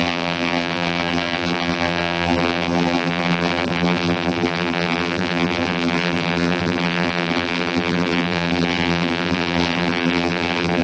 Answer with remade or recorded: remade